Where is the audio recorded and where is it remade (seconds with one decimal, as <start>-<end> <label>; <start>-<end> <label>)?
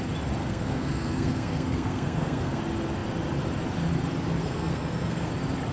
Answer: 0.0-0.4 recorded; 0.4-2.6 remade; 2.6-4.4 recorded; 4.4-5.3 remade; 5.3-5.7 recorded